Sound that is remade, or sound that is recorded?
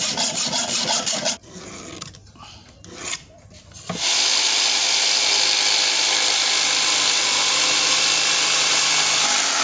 recorded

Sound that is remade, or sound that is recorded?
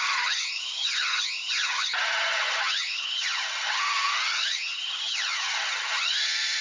remade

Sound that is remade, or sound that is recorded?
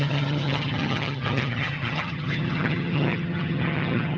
remade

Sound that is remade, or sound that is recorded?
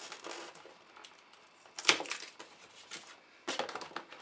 recorded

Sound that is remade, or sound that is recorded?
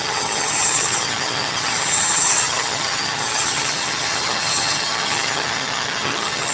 remade